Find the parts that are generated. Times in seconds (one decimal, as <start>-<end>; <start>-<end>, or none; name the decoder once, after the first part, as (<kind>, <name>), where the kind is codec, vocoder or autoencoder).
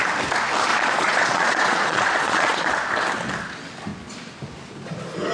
0.7-2.7 (vocoder, Vocos)